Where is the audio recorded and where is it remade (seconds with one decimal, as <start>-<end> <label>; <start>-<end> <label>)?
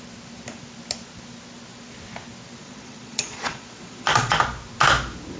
0.0-2.6 recorded; 2.6-4.4 remade; 4.4-5.4 recorded